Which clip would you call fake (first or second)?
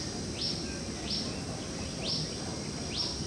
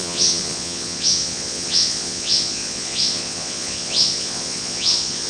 second